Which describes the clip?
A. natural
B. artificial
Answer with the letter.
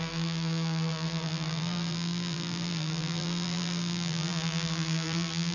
B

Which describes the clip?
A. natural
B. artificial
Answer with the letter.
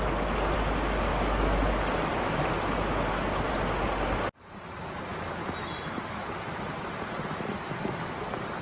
A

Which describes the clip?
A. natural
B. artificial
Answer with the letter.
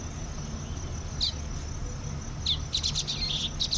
A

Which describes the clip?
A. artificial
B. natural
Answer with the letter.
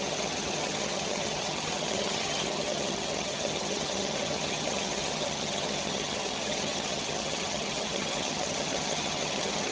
A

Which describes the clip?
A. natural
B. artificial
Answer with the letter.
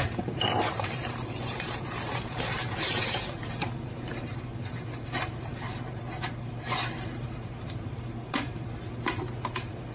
B